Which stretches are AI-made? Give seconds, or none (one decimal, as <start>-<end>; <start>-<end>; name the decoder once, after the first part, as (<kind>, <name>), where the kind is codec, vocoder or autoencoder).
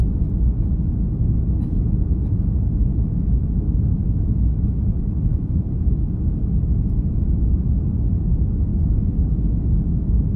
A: 0.0-1.0 (autoencoder, DAC-VAE); 2.9-7.5; 8.7-9.8